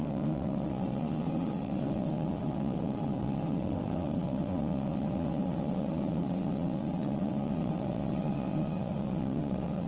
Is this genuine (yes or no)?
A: no